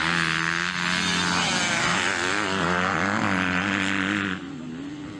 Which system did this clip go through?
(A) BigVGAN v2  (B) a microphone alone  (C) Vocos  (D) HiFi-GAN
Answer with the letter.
B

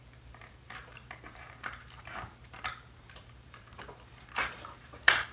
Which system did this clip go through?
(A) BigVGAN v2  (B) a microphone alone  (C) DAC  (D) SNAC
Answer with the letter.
A